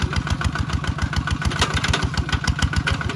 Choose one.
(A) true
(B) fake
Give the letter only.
A